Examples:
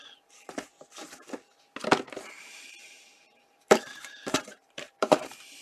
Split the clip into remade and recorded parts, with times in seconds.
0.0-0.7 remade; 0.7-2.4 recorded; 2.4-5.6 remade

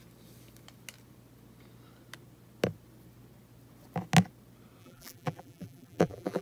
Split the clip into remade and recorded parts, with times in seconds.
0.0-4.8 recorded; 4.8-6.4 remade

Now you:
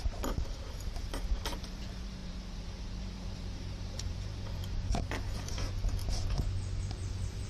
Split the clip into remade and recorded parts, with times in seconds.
0.0-6.0 remade; 6.0-6.8 recorded; 6.8-7.5 remade

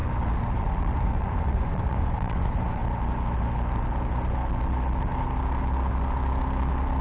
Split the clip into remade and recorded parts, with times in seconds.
0.0-0.6 recorded; 0.6-2.8 remade; 2.8-7.0 recorded